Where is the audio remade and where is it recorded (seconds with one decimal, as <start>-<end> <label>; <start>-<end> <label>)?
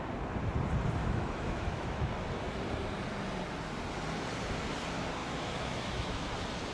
0.0-1.0 recorded; 1.0-2.1 remade; 2.1-5.2 recorded; 5.2-6.3 remade; 6.3-6.7 recorded